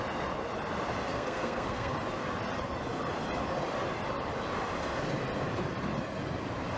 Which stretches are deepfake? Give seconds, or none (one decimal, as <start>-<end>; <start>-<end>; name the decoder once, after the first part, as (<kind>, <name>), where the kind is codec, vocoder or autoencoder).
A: 1.1-1.9 (codec, SNAC)